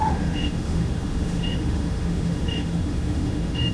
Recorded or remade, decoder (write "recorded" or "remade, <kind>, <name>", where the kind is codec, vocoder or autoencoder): remade, autoencoder, DAC-VAE